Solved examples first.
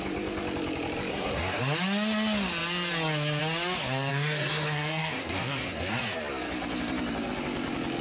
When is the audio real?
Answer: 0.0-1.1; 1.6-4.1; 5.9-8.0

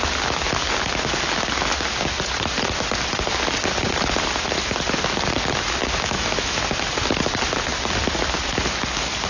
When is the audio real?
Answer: 0.0-5.8; 6.6-9.3

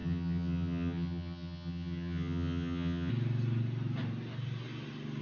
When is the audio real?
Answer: 3.1-5.2

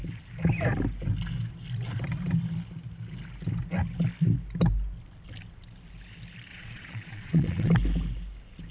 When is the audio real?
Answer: 0.0-6.5; 7.7-8.7